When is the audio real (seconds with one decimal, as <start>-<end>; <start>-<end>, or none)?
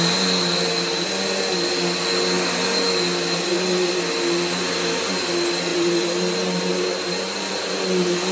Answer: 0.0-8.3